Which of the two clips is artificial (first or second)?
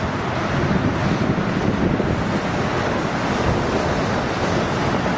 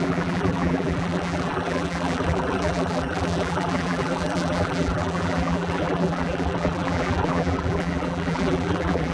second